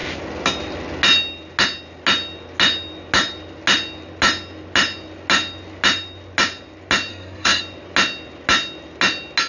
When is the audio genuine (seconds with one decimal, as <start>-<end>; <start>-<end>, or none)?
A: 0.0-7.1; 7.6-9.5